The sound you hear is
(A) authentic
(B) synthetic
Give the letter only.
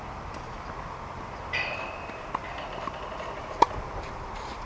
B